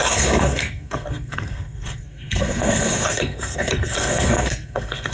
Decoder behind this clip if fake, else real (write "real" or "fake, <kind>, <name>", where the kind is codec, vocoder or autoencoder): fake, codec, SNAC